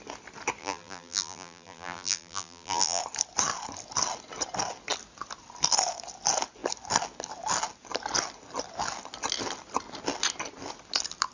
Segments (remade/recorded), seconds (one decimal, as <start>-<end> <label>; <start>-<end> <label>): 0.0-0.6 recorded; 0.6-3.0 remade; 3.0-11.3 recorded